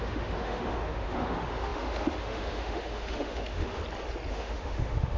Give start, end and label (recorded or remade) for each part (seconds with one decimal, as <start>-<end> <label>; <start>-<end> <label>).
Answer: 0.0-3.8 remade; 3.8-4.3 recorded; 4.3-5.2 remade